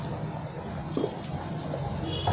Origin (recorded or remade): recorded